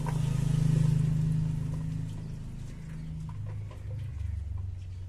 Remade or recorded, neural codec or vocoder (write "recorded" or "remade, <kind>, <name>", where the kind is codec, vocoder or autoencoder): recorded